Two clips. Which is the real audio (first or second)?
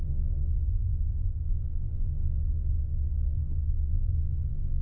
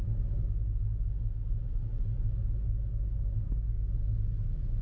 second